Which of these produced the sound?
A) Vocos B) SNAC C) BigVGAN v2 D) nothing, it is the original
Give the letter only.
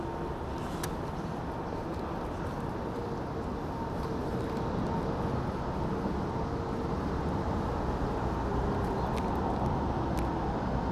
D